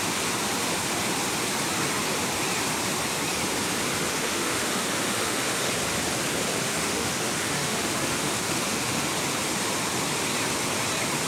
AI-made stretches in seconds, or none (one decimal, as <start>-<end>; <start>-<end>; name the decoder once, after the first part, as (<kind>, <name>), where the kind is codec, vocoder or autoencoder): 4.1-5.7 (autoencoder, DAC-VAE); 6.7-9.1